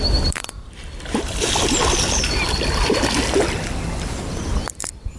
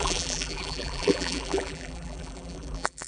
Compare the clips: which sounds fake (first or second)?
second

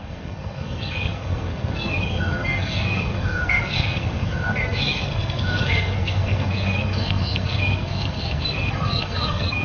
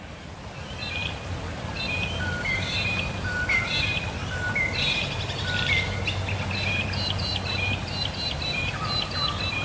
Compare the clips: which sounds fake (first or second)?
first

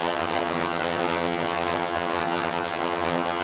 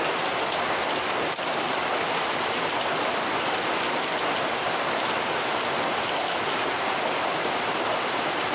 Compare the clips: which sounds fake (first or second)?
first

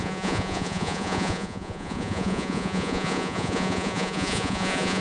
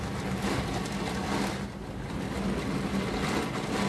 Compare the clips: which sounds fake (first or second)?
first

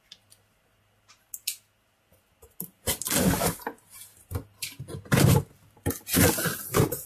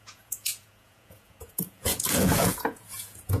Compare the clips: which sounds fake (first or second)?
second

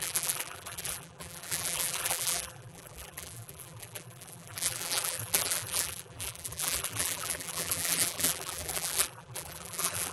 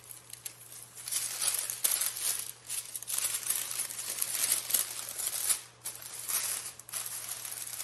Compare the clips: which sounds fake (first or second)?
first